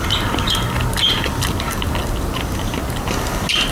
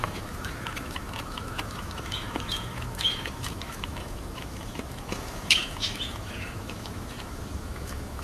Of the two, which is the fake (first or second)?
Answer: second